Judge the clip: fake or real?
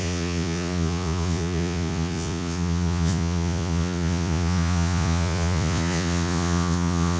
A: fake